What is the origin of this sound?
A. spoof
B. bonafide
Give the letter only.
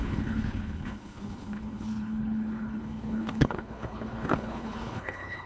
A